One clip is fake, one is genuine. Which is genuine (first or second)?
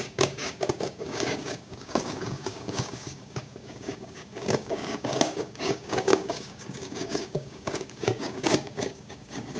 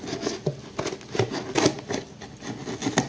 second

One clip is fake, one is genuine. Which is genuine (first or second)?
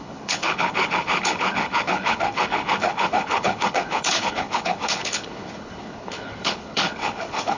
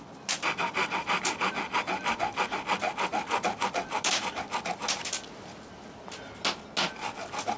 second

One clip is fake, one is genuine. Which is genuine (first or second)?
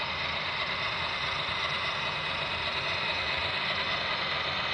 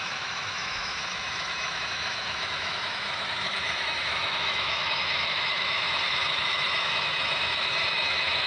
first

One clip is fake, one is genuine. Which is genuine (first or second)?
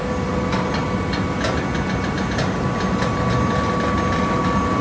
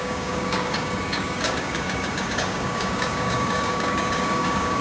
first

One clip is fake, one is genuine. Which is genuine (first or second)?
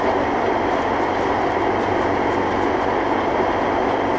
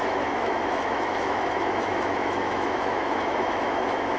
first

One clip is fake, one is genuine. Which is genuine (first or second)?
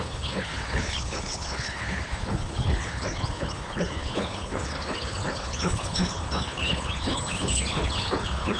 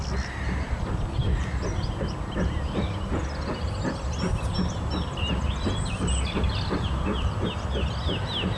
second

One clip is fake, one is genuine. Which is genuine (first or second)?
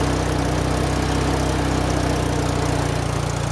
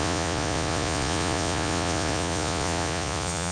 first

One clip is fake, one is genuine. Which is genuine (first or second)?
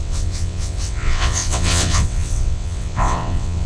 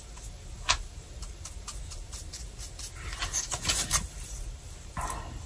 second